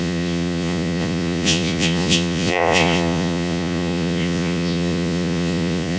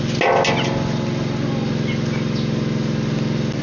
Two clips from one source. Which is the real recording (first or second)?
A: second